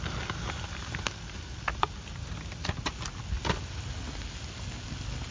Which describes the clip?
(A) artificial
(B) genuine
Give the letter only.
B